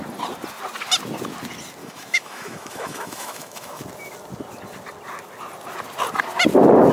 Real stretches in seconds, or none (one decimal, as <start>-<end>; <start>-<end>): 0.0-1.8; 3.8-6.9

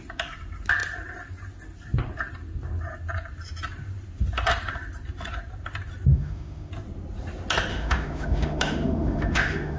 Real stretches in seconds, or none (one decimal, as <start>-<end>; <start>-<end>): 0.0-6.1; 6.7-7.7

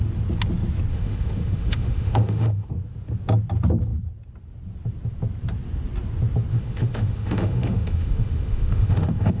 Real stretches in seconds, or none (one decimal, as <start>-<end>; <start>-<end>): 0.0-0.9; 2.7-6.5

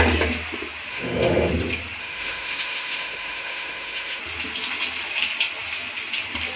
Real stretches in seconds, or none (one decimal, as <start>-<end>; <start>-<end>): 0.0-0.9; 1.5-2.0; 4.2-6.6

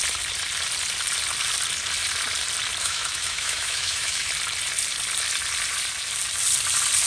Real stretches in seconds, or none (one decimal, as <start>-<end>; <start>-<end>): 0.0-2.8; 4.3-7.1

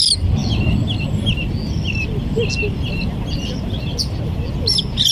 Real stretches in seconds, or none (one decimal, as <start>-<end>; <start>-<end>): 0.0-5.1

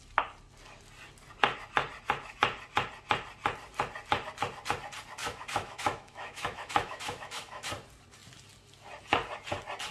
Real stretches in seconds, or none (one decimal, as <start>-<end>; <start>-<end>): 0.0-5.2; 7.7-9.9